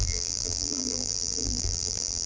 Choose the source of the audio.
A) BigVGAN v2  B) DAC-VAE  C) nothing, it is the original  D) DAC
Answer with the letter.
A